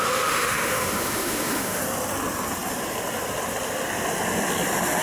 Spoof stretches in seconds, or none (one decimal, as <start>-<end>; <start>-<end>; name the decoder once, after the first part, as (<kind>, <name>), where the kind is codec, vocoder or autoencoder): 0.0-1.8 (autoencoder, DAC-VAE)